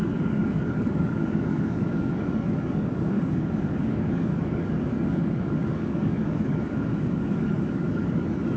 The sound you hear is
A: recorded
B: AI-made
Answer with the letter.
B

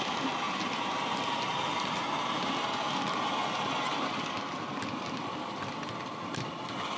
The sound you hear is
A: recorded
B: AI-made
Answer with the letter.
A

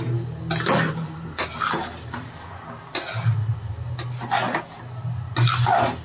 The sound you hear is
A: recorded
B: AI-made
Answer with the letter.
A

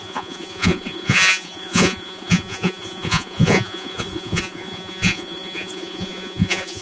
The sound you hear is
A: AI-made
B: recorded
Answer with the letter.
A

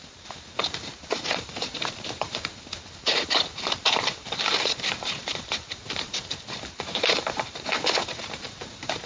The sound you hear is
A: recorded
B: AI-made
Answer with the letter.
B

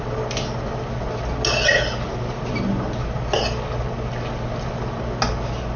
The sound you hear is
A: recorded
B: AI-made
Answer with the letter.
A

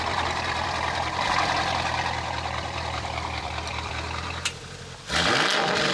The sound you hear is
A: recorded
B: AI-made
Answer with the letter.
B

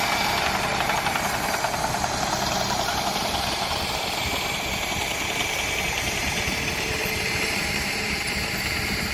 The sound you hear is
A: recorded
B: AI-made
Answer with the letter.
B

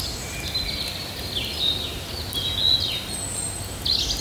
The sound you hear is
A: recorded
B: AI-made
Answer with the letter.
A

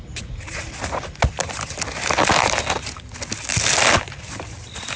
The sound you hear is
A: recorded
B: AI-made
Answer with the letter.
A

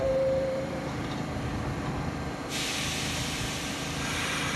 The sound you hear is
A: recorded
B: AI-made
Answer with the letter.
B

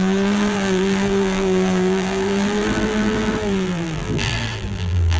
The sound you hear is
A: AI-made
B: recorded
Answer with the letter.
A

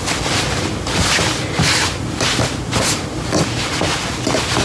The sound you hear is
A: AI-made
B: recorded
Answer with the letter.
B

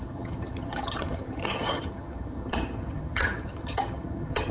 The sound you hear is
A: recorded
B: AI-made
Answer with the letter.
B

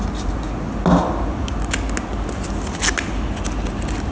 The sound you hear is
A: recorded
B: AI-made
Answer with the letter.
A